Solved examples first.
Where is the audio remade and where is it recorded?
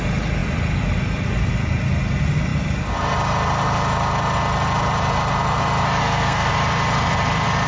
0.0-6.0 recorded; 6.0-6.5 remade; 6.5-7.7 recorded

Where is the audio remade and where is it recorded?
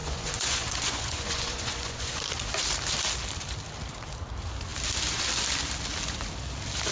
0.0-2.1 remade; 2.1-6.9 recorded